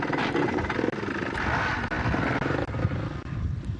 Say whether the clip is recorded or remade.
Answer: recorded